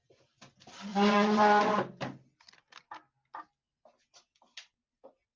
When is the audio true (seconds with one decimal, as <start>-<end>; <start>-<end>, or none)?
0.0-0.9; 1.6-5.4

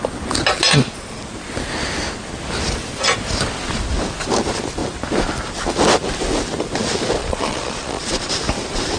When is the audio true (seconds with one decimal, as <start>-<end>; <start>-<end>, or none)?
0.0-7.2; 8.3-9.0